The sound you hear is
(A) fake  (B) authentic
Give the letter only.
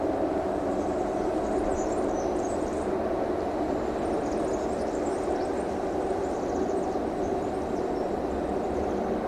B